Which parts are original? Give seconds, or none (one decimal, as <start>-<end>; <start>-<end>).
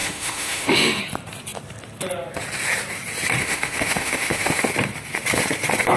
1.0-3.4; 4.6-6.0